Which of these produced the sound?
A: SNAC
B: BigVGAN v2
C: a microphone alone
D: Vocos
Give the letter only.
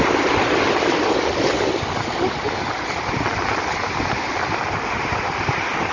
C